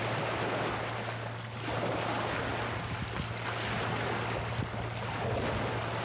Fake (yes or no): no